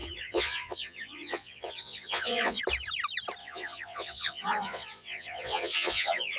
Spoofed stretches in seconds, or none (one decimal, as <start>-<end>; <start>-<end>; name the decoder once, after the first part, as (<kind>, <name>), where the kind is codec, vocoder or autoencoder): 0.0-2.6 (vocoder, Vocos); 3.4-6.4